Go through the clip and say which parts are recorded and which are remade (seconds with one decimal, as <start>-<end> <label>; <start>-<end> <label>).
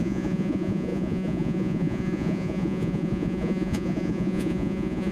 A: 0.0-5.1 remade